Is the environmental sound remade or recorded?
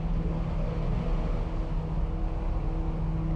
recorded